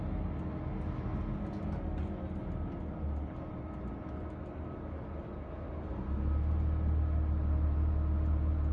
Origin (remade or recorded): recorded